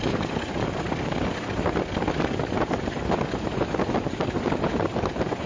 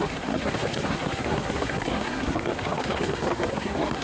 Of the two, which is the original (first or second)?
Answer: first